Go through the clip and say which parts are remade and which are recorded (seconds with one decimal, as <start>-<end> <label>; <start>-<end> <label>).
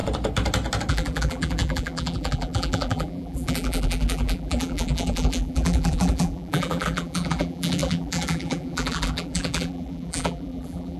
0.0-0.9 recorded; 0.9-11.0 remade